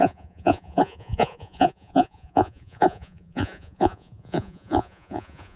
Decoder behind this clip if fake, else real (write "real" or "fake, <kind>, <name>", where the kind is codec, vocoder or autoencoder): fake, vocoder, Vocos